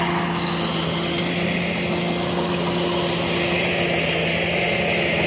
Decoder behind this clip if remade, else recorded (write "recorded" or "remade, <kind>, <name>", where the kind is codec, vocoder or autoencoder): recorded